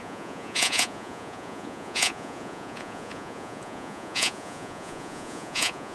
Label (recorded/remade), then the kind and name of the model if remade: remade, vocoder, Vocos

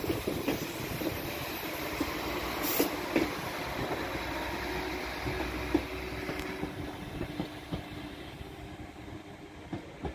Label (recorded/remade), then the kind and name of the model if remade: recorded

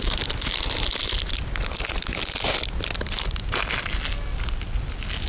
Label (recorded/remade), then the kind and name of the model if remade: recorded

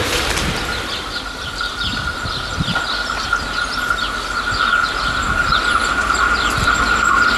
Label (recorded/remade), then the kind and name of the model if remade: recorded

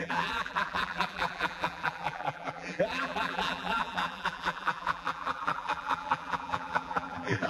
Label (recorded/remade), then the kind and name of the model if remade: remade, vocoder, BigVGAN v2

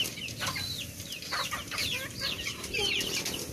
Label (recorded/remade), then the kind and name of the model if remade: recorded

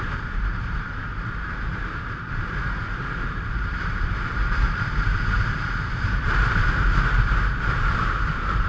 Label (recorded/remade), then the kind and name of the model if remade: remade, vocoder, BigVGAN v2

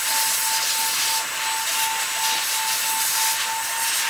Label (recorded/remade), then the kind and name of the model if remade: recorded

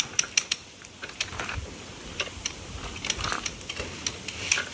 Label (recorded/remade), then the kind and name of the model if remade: recorded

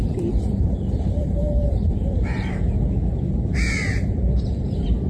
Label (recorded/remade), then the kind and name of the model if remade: remade, vocoder, BigVGAN v2